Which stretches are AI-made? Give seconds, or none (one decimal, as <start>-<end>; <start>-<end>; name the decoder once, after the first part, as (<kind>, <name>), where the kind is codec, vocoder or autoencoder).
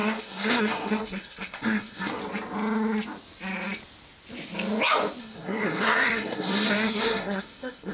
0.0-2.2 (codec, SNAC); 5.2-7.9